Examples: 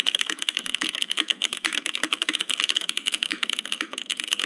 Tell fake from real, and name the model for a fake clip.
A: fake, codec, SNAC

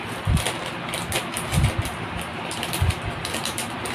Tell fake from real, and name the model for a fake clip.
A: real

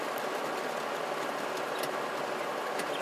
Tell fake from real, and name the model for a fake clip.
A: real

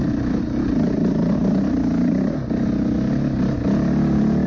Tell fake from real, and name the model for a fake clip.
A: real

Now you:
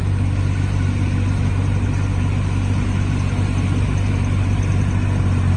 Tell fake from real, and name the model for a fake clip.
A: real